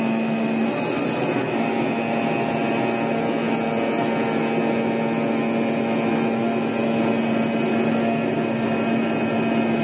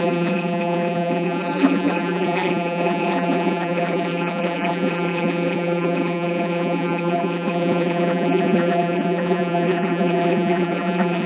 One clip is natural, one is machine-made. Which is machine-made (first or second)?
second